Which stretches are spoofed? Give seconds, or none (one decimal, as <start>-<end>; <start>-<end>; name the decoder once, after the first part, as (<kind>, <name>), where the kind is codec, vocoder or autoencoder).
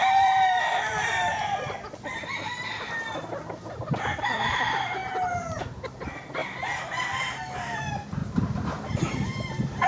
0.0-5.0 (vocoder, BigVGAN v2); 5.6-6.4; 6.9-8.2; 8.9-9.9